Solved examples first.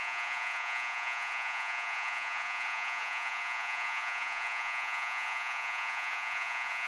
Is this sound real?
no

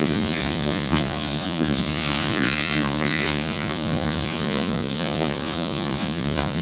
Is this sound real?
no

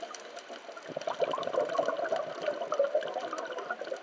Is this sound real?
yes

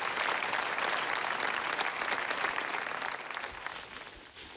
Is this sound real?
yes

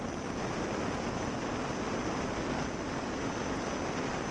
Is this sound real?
yes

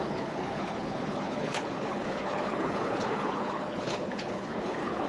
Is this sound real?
no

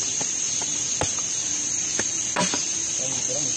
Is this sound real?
yes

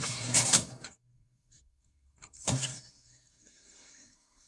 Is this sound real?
no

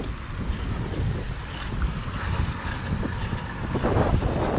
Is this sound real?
yes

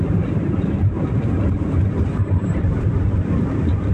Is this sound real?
no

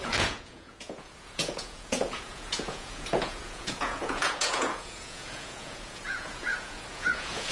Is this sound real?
no